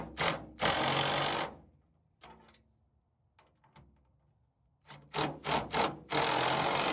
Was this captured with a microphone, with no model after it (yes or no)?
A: yes